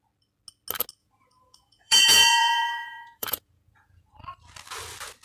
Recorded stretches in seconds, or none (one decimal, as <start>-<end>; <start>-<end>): 0.0-1.0; 4.1-5.2